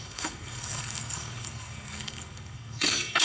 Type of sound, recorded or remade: remade